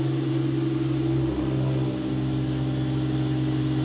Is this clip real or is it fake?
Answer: real